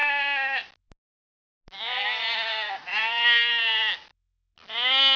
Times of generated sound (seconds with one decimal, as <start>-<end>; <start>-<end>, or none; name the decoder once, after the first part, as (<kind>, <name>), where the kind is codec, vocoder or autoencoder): none